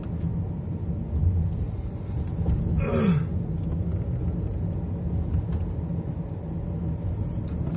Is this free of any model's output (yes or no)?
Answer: yes